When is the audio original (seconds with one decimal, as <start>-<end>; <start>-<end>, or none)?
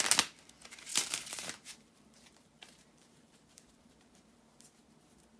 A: 0.0-0.9; 4.1-5.4